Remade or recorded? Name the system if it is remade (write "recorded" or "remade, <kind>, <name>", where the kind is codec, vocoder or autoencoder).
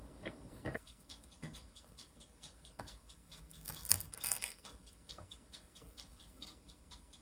remade, codec, SNAC